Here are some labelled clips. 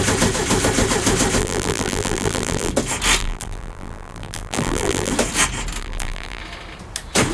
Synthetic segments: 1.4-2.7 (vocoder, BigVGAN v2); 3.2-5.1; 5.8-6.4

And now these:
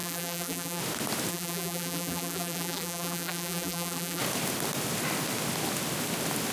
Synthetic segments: 0.0-0.8 (vocoder, BigVGAN v2); 1.3-4.2

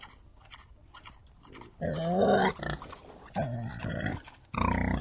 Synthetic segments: none

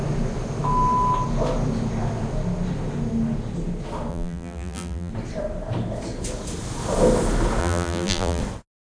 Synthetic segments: 4.1-5.1 (vocoder, BigVGAN v2); 7.6-8.4

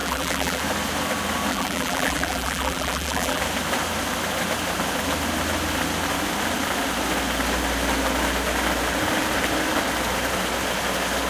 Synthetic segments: 0.0-0.6 (vocoder, BigVGAN v2); 1.5-3.4

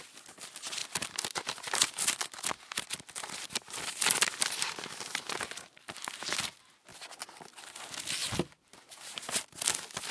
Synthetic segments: 8.2-9.3 (vocoder, BigVGAN v2)

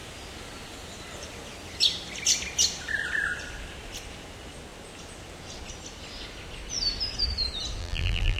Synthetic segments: 7.8-8.4 (vocoder, BigVGAN v2)

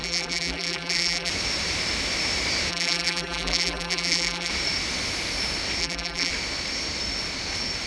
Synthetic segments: 0.0-1.3 (vocoder, BigVGAN v2); 2.7-4.5; 5.8-6.3